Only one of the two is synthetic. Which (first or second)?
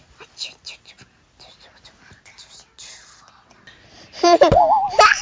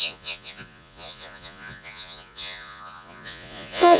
second